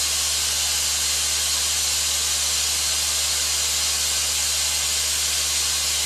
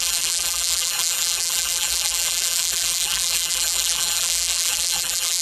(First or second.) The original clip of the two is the first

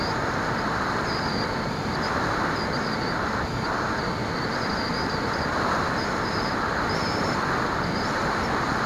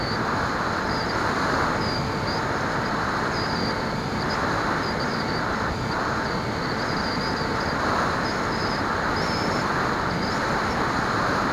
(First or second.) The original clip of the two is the second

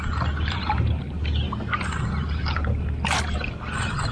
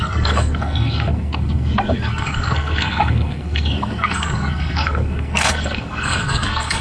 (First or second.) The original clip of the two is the first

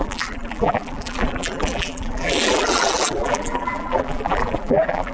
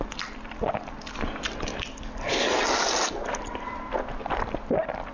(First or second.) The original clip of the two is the second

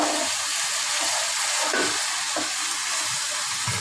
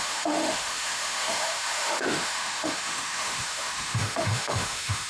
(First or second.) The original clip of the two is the first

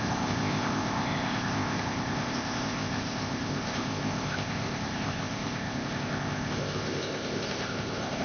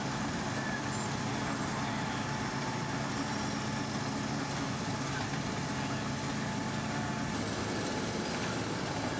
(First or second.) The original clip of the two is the second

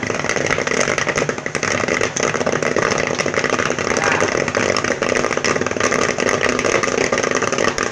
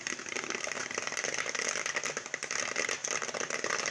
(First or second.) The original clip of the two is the first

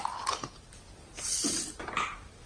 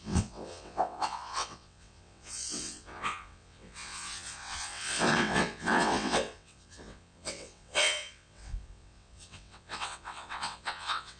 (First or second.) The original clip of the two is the first